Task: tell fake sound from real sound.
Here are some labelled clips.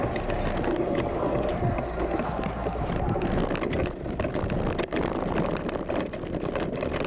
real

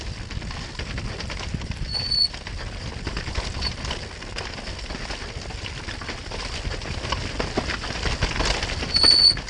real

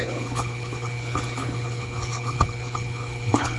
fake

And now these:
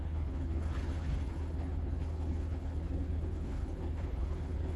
fake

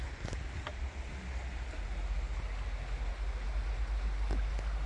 real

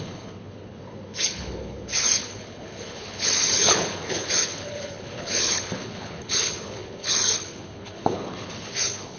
fake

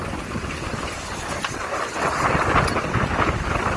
real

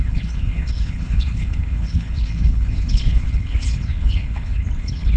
fake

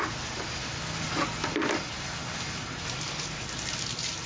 real